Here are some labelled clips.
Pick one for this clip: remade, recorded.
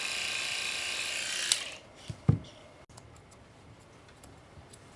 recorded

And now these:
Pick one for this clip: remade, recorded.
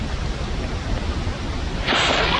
recorded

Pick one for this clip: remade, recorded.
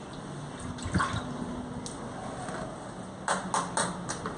recorded